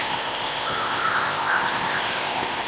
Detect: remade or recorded remade